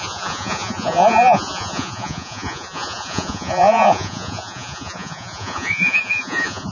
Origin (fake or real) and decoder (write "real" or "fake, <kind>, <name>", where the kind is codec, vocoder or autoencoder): fake, vocoder, Vocos